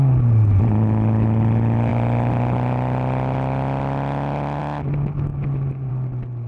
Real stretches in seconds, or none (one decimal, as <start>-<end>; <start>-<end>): 0.0-6.5